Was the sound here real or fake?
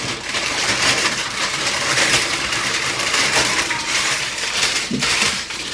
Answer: fake